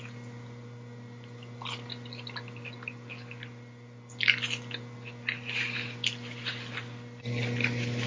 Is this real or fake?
real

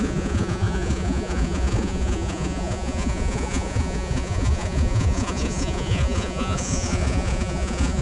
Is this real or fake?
fake